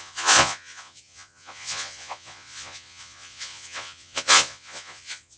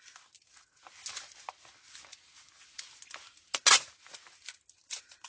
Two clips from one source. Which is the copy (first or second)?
first